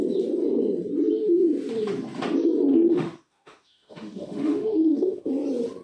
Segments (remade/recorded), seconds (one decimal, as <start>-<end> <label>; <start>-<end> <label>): 0.0-2.7 recorded; 2.7-5.3 remade; 5.3-5.8 recorded